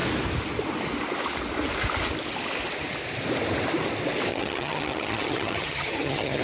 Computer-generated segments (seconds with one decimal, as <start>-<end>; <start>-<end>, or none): 4.3-6.4